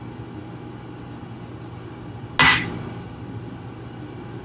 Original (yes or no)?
yes